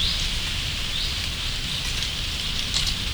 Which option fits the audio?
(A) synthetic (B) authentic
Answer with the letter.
A